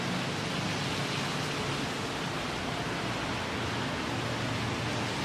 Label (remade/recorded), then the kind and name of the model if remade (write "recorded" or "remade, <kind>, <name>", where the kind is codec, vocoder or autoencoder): recorded